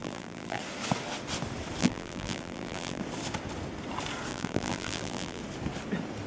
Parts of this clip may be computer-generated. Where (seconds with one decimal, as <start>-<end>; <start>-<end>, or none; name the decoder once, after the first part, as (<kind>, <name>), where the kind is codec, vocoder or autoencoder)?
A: 0.0-0.6 (vocoder, BigVGAN v2); 1.8-3.0; 4.3-5.4